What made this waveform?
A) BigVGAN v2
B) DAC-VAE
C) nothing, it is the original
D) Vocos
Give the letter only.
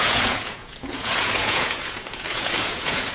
D